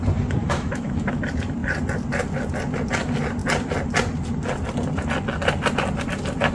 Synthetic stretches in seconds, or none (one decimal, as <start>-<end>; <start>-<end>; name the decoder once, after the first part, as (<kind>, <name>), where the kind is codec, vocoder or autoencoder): 0.4-1.2 (autoencoder, DAC-VAE)